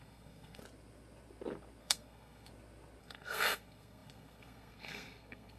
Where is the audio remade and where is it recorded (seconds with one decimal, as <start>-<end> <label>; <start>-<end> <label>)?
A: 0.0-0.6 remade; 0.6-1.8 recorded; 1.8-2.5 remade; 2.5-3.0 recorded; 3.0-5.6 remade